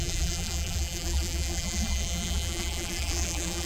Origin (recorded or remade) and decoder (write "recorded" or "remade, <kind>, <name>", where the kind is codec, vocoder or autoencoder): remade, vocoder, BigVGAN v2